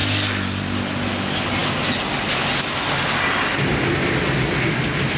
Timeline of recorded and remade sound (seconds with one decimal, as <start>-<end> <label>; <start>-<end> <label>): 0.0-5.2 recorded